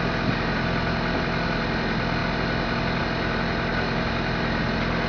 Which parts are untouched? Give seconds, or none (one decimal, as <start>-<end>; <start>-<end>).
0.0-5.1